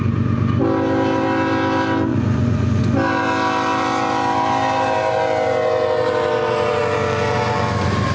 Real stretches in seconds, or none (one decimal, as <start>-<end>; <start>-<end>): 0.0-2.1; 2.8-8.1